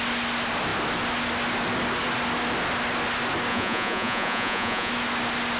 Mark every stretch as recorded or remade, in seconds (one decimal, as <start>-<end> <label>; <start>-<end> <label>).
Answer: 0.0-3.5 recorded; 3.5-4.9 remade; 4.9-5.6 recorded